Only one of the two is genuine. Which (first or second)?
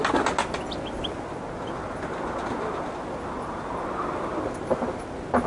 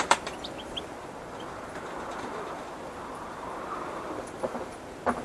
first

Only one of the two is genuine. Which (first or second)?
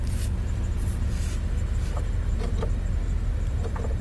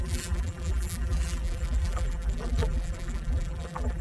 first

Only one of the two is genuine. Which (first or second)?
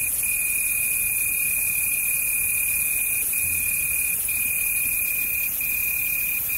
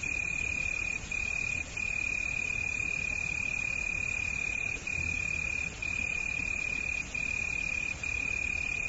second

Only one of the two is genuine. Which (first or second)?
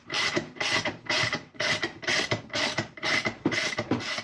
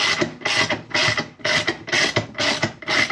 second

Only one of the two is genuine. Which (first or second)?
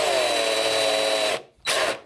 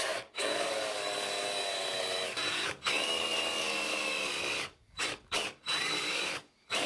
first